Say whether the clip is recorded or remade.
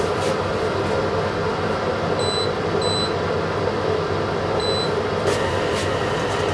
recorded